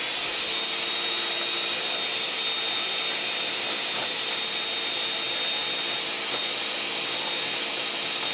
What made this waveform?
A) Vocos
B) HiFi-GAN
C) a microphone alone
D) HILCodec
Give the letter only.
C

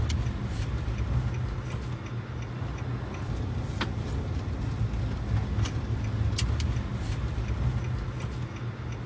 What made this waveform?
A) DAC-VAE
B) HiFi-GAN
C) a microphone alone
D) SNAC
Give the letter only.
C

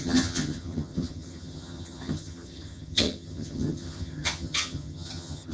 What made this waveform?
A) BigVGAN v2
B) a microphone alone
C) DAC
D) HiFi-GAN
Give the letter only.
D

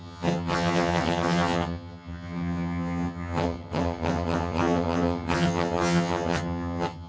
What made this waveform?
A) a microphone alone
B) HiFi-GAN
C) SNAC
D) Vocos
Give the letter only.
B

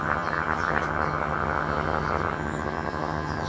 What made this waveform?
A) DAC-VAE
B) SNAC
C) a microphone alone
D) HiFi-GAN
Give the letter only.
D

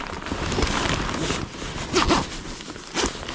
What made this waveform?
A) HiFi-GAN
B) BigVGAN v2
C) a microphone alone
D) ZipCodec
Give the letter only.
C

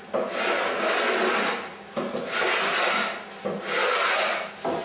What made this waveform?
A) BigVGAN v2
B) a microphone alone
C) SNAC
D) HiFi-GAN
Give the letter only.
B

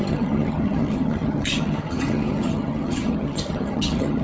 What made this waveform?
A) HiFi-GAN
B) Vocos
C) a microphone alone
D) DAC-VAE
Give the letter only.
A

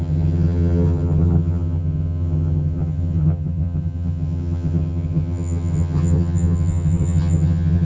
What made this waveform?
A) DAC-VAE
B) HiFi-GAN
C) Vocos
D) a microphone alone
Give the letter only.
B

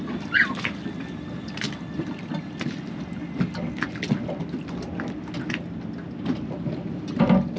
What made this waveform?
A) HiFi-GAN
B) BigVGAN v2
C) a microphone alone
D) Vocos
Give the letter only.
C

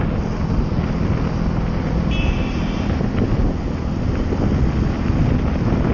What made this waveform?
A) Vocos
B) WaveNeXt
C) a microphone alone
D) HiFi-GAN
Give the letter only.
C